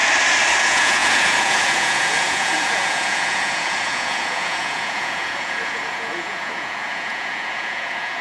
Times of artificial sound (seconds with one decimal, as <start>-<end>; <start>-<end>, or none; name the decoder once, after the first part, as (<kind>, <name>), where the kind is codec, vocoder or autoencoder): 0.6-8.2 (vocoder, Vocos)